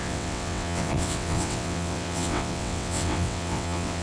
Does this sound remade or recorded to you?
remade